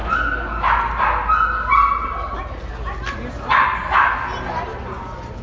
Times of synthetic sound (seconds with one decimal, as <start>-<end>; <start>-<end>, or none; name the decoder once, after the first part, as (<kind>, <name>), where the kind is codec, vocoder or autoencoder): none